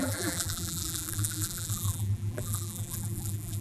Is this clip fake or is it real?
fake